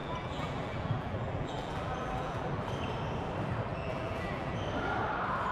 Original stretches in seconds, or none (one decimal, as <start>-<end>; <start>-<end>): 2.6-3.7; 4.5-5.5